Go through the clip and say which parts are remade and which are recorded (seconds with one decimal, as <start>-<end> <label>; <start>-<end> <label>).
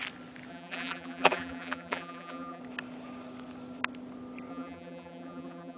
0.0-0.5 recorded; 0.5-2.6 remade; 2.6-4.5 recorded; 4.5-5.8 remade